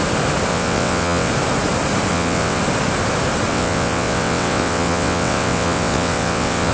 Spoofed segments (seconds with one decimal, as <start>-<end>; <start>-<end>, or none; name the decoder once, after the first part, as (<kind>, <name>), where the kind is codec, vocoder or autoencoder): 0.5-1.3 (vocoder, WaveNeXt); 2.1-2.6; 3.5-6.7